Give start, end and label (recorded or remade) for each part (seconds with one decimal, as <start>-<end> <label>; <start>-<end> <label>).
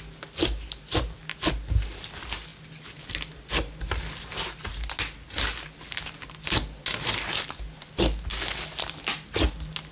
0.0-9.9 recorded